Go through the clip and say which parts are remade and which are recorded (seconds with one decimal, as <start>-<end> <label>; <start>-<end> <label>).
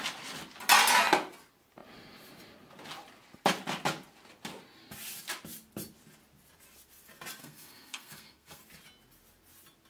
0.0-7.4 recorded; 7.4-8.6 remade; 8.6-9.9 recorded